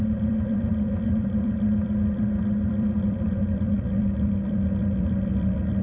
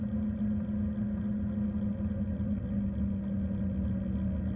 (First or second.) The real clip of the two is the second